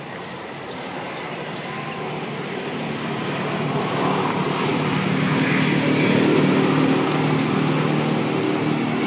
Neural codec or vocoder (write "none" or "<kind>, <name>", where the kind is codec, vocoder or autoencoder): none